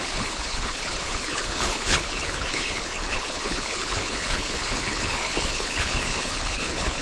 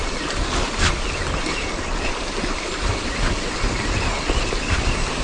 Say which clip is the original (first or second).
second